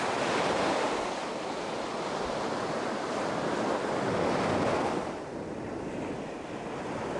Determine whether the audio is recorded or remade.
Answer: recorded